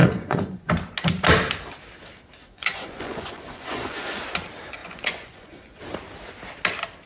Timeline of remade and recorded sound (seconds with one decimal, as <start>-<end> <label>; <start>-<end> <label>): 0.0-0.7 remade; 0.7-2.4 recorded; 2.4-4.2 remade; 4.2-4.8 recorded; 4.8-5.8 remade; 5.8-7.1 recorded